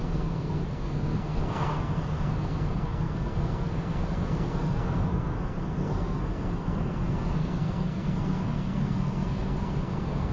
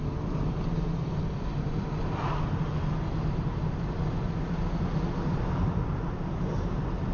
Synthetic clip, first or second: first